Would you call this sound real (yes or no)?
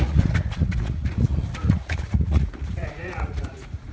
no